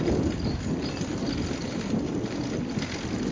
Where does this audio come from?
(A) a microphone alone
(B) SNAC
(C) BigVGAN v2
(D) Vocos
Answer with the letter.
A